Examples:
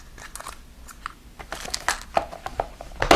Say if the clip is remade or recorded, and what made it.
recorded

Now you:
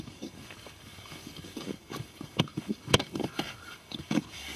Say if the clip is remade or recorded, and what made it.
remade, codec, DAC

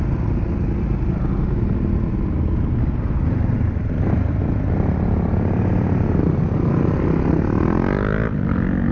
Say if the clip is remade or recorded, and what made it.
recorded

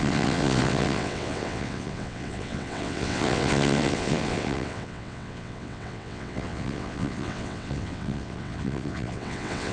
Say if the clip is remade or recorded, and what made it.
remade, vocoder, WaveNeXt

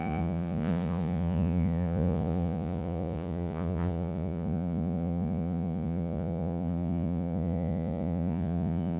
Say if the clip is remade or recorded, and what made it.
remade, vocoder, Vocos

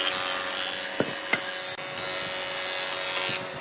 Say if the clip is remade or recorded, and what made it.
recorded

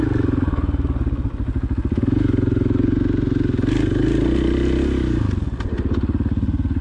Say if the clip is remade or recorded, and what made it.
recorded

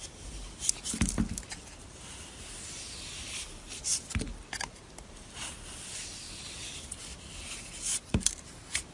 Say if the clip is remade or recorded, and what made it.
recorded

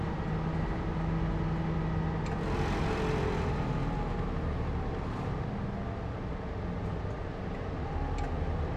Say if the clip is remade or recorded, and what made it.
recorded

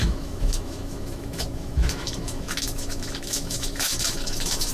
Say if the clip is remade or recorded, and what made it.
remade, autoencoder, DAC-VAE